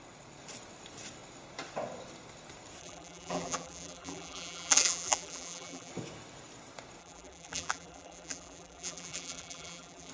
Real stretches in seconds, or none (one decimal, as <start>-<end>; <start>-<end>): 0.0-2.8; 5.9-7.0